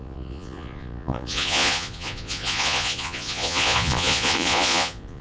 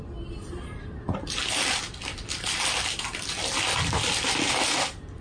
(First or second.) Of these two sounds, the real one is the second